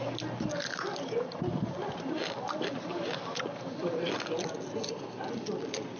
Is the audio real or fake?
real